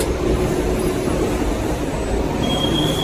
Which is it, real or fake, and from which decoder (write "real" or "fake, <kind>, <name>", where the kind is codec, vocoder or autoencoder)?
real